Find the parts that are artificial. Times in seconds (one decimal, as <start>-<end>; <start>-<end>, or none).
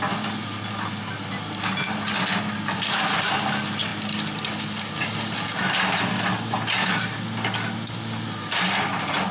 none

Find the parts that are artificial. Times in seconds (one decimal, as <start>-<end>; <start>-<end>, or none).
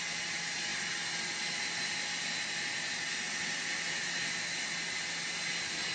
none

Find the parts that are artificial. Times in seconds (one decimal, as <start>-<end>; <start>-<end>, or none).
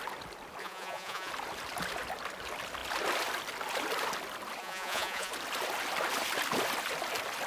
0.6-1.3; 4.6-5.3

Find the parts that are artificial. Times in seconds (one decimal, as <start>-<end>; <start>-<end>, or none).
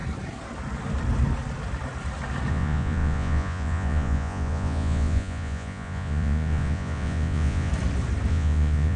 2.5-7.7; 8.3-9.0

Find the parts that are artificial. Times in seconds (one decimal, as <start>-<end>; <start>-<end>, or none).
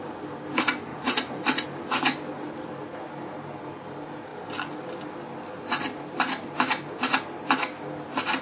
0.9-1.4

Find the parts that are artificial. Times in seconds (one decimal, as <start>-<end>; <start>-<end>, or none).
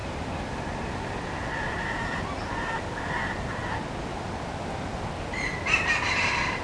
0.0-0.6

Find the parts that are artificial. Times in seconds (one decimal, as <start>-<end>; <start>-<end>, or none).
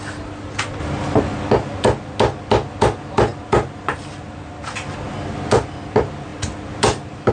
none